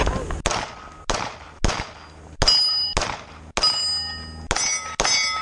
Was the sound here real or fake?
real